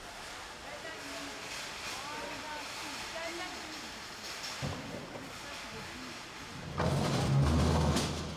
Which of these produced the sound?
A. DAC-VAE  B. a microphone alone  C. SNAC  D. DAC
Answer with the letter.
B